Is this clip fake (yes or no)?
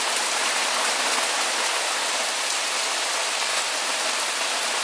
no